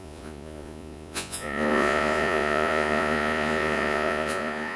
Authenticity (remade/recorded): remade